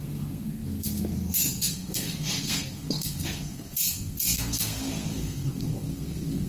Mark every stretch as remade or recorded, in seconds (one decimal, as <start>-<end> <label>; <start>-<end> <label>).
0.0-6.5 remade